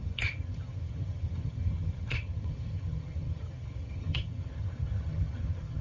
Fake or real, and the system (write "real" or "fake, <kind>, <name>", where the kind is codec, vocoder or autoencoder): fake, vocoder, HiFi-GAN